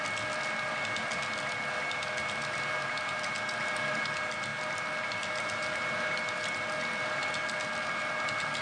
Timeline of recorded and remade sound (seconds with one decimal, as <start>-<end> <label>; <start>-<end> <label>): 0.0-8.6 recorded